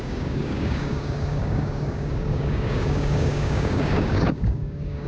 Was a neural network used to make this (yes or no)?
yes